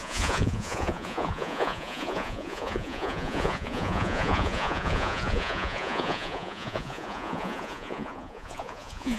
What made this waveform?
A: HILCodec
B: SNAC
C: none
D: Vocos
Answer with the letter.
D